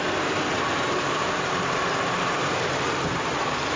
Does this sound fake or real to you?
fake